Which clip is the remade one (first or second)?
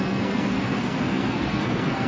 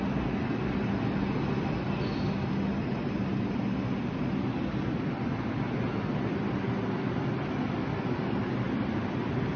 first